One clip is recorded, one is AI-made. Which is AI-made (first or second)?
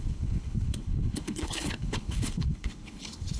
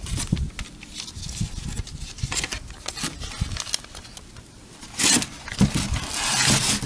first